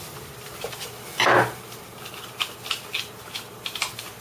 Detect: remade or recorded recorded